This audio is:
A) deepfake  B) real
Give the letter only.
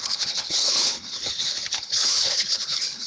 A